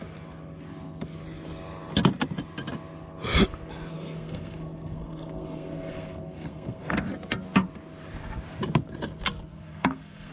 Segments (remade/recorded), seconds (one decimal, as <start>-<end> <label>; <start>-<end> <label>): 0.0-3.9 recorded; 3.9-7.1 remade; 7.1-9.5 recorded; 9.5-10.3 remade